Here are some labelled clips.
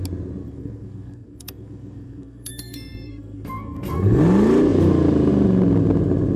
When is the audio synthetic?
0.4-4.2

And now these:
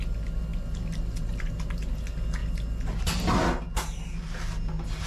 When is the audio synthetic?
none

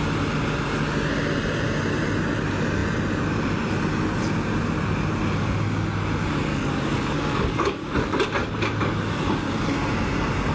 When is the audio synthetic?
6.5-8.3